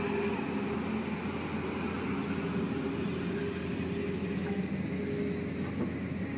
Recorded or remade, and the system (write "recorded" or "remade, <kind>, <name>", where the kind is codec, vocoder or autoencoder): recorded